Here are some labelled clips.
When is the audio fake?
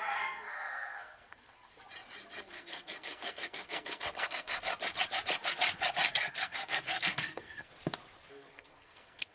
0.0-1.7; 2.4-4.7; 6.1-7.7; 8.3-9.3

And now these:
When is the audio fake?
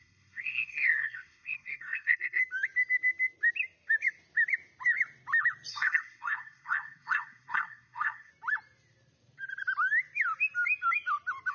0.0-2.4; 5.7-8.3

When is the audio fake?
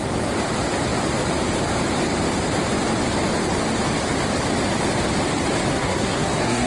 5.7-6.7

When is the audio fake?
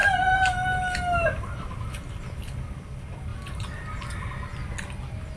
none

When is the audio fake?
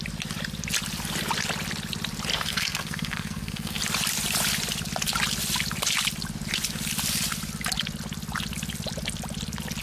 2.3-3.8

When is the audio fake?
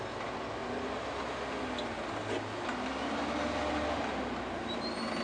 none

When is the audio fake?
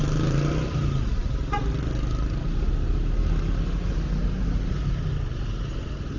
none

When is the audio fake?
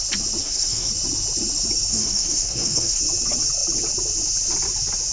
0.4-0.9; 1.9-3.0